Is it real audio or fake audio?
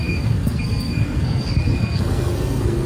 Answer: fake